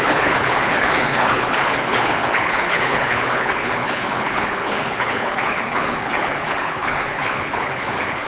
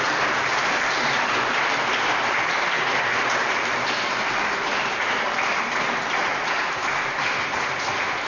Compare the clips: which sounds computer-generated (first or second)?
first